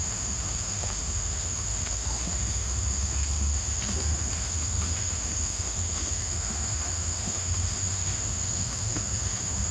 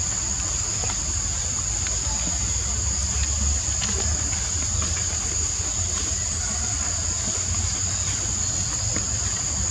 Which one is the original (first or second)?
second